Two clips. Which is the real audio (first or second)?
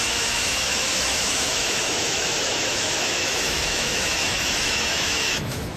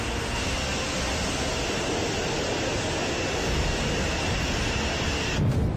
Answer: second